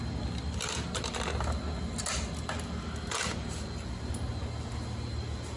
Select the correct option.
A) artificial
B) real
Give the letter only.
B